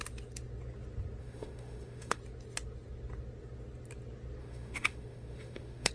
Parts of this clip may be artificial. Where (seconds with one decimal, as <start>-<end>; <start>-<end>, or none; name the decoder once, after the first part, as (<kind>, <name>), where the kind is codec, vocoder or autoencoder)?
1.2-2.2 (autoencoder, DAC-VAE); 4.4-5.9